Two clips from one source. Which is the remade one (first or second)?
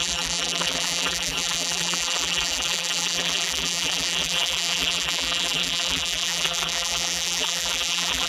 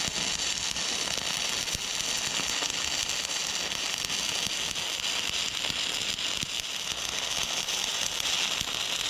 first